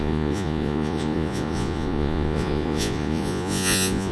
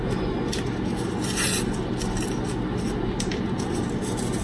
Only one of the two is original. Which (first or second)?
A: second